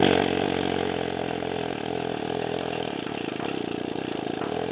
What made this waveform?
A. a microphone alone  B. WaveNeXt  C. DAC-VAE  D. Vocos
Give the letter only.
A